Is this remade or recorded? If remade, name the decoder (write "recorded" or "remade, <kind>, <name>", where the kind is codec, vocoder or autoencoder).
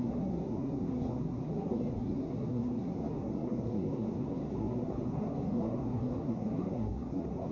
remade, codec, SNAC